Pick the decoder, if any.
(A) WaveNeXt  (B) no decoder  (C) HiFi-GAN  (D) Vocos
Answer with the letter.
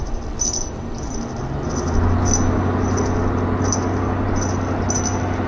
B